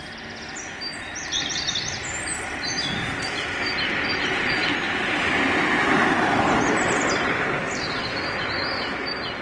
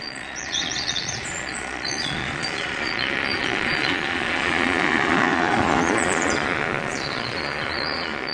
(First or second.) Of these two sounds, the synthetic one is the second